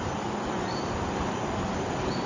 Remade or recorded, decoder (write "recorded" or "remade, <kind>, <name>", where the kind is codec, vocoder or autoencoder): recorded